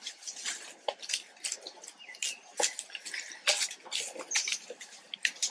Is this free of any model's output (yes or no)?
yes